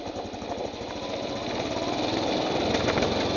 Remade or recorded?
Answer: recorded